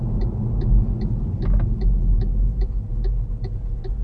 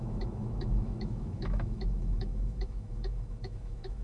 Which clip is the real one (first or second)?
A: first